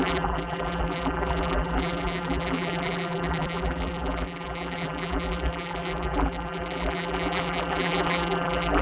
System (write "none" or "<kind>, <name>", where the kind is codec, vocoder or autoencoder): vocoder, BigVGAN v2